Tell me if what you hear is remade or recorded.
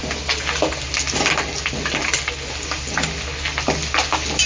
recorded